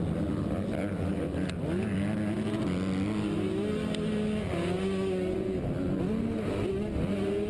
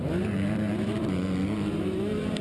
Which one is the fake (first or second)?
second